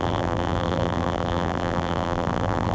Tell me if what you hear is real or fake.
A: fake